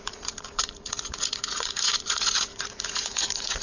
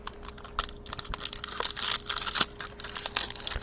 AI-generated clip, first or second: first